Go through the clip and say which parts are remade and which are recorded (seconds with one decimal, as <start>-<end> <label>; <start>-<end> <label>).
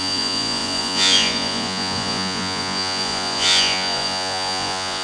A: 0.0-5.0 remade